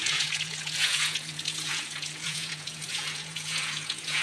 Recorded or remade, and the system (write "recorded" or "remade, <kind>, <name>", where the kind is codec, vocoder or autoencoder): remade, vocoder, Vocos